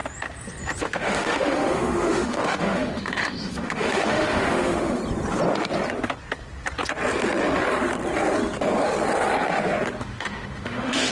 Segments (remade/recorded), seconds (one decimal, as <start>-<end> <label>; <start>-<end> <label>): 0.0-0.8 recorded; 0.8-5.0 remade; 5.0-10.0 recorded; 10.0-11.1 remade